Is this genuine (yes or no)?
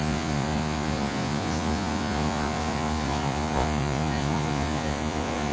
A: no